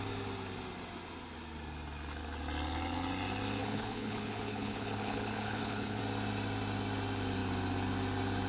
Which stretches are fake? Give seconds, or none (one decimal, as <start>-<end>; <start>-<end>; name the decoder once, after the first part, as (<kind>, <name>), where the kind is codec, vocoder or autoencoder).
3.6-6.0 (codec, HILCodec)

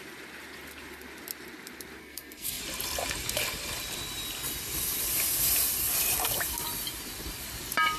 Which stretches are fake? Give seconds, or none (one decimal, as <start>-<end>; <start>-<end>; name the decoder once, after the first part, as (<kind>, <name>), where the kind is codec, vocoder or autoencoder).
2.0-2.6 (codec, SNAC)

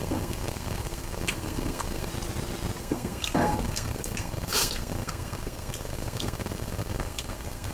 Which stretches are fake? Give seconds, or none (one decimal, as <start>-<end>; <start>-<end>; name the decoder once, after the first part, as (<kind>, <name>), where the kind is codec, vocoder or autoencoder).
0.0-2.1 (codec, SNAC); 2.8-7.7

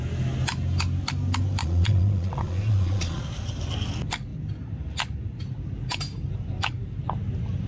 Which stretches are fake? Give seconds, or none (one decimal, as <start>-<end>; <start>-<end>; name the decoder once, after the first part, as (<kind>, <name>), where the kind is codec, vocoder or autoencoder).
1.6-3.2 (vocoder, Vocos)

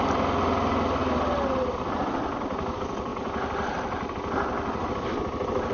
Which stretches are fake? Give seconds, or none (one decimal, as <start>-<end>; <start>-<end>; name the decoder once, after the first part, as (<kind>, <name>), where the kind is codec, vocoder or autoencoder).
none